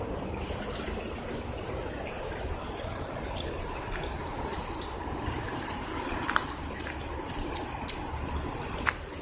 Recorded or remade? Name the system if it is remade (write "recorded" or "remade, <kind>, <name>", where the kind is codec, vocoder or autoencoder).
recorded